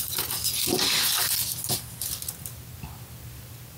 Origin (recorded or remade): recorded